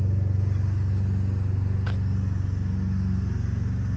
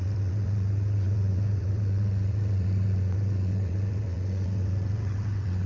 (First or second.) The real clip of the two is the first